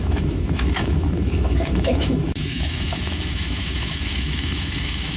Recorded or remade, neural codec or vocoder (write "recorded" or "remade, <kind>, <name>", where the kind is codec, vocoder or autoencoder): remade, autoencoder, DAC-VAE